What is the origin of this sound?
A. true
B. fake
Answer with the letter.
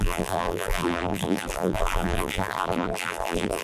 B